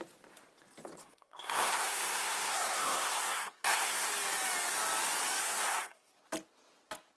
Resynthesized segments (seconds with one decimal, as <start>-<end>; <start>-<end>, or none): 1.0-4.1; 5.4-6.1